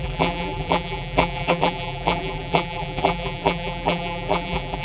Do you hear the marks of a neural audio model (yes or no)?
yes